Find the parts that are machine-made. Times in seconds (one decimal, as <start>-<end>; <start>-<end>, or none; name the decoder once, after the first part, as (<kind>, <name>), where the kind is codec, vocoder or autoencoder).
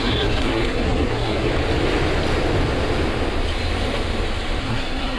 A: 0.0-1.5 (codec, SNAC); 4.6-5.2